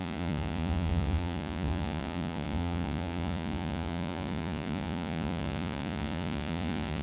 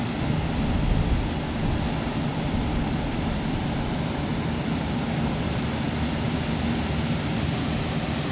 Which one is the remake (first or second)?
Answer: first